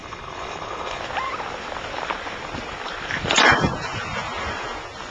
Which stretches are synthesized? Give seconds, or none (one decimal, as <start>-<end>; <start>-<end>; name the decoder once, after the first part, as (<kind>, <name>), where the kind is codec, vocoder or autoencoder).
0.0-1.0 (codec, HILCodec)